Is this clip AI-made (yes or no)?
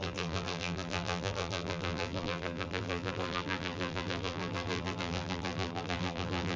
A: yes